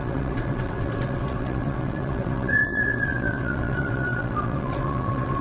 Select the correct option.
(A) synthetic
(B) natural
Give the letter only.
A